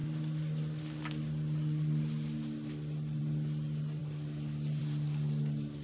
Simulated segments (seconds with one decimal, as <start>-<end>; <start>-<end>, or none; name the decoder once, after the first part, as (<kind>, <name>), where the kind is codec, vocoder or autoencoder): none